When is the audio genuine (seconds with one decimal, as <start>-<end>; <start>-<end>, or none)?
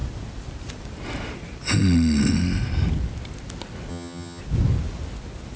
0.0-3.9; 4.4-5.6